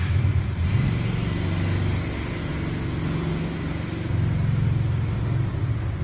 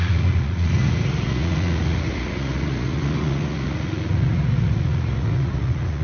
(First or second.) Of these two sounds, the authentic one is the first